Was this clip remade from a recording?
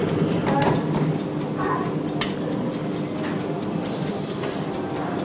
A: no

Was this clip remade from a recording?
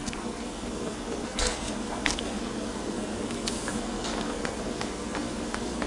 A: yes